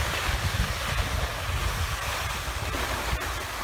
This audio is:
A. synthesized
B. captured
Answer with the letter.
B